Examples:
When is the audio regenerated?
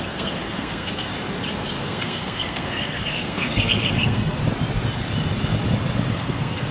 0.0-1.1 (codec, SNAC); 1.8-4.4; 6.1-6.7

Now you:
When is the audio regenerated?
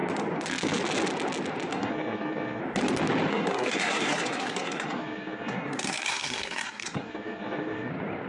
1.7-2.6 (codec, SNAC); 3.3-7.9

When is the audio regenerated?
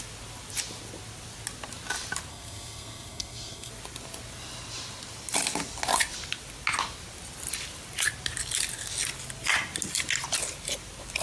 2.3-3.7 (codec, SNAC)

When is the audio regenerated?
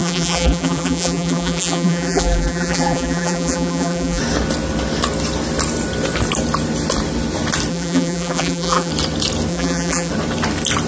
0.0-4.2 (vocoder, BigVGAN v2); 7.7-8.9; 9.5-10.1